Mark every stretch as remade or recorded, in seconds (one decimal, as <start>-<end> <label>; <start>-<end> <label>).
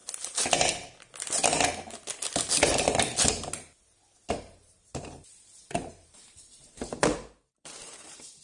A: 0.0-4.3 recorded; 4.3-8.4 remade